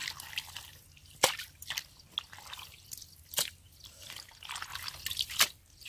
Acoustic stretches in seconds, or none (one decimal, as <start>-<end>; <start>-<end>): 0.0-5.9